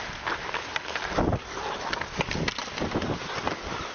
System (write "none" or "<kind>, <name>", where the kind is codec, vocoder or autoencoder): none